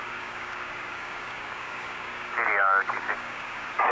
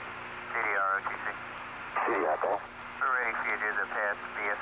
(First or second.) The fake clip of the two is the first